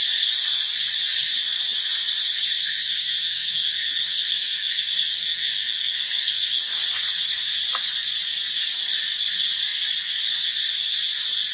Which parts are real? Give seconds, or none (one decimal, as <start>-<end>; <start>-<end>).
0.0-2.6; 6.6-11.5